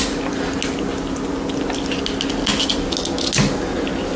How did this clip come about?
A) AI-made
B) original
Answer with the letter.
B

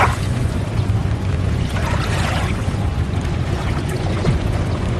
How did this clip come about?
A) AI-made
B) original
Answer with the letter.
A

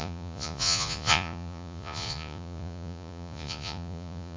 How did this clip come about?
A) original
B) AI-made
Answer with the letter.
B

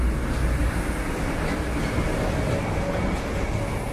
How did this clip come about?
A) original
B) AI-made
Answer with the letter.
A